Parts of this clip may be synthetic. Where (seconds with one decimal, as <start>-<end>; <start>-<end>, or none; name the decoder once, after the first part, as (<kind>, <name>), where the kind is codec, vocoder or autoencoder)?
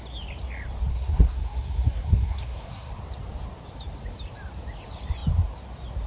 0.9-2.9 (codec, SNAC)